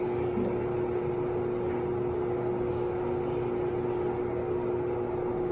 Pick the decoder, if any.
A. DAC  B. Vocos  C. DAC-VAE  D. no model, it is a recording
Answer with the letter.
D